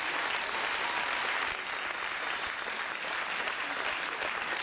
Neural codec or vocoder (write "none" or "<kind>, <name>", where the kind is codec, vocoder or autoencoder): none